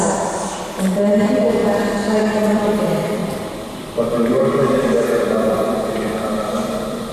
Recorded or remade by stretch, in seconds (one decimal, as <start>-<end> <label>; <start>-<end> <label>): 0.0-1.6 remade; 1.6-2.2 recorded; 2.2-7.1 remade